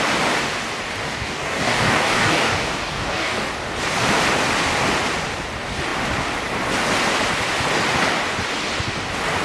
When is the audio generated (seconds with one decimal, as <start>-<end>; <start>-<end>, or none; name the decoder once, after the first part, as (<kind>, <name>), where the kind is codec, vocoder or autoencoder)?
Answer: 1.0-3.5 (codec, DAC)